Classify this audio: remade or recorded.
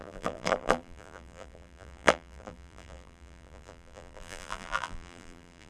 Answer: remade